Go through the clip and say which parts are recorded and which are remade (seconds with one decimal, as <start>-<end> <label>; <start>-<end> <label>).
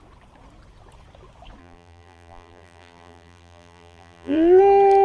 0.0-1.6 recorded; 1.6-4.6 remade; 4.6-5.0 recorded